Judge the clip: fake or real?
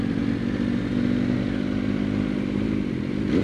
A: real